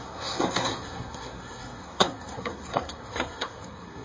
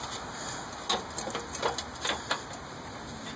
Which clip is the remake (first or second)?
first